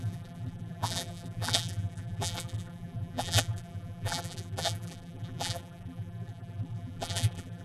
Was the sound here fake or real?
fake